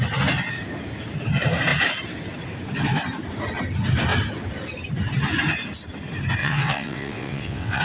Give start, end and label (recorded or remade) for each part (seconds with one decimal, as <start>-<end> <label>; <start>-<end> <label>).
0.0-6.4 recorded; 6.4-7.8 remade